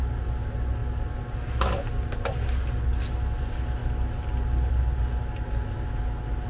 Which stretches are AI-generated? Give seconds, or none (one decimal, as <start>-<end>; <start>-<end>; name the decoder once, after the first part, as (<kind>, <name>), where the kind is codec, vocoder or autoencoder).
none